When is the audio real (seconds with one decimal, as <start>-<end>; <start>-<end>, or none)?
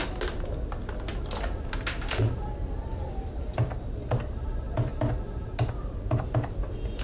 0.0-7.0